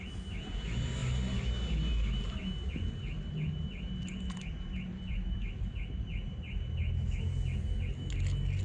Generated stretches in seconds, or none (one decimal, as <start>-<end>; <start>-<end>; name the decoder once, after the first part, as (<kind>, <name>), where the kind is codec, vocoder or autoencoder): none